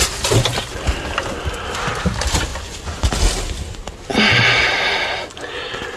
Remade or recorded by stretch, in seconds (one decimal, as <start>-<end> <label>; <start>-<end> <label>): 0.0-2.5 recorded; 2.5-3.1 remade; 3.1-6.0 recorded